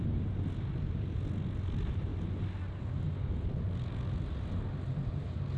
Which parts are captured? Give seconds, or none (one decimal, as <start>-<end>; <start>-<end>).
0.0-5.6